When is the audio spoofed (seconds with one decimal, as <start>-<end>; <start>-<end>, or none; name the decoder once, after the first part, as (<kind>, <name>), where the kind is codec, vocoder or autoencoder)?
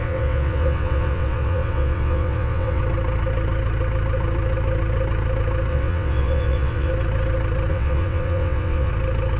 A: 0.0-2.8 (vocoder, WaveNeXt); 5.7-6.9; 7.7-8.9